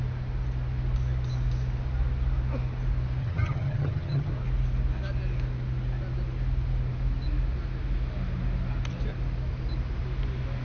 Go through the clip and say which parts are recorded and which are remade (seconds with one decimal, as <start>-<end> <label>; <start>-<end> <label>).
0.0-3.2 recorded; 3.2-4.3 remade; 4.3-10.6 recorded